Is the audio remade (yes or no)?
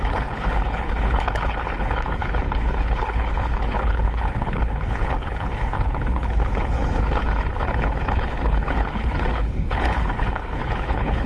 yes